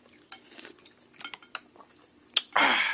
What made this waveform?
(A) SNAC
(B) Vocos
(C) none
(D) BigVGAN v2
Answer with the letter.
C